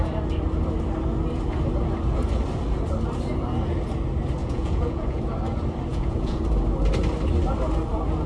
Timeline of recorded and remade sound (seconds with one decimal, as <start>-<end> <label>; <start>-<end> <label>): 0.0-4.4 recorded; 4.4-5.2 remade; 5.2-5.9 recorded; 5.9-6.4 remade; 6.4-8.3 recorded